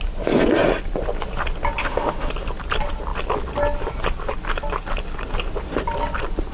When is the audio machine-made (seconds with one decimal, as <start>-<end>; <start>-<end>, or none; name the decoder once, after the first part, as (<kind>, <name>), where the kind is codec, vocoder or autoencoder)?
1.8-2.3 (autoencoder, DAC-VAE)